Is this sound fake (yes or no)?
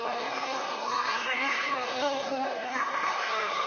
yes